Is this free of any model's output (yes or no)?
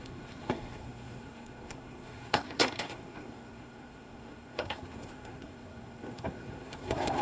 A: no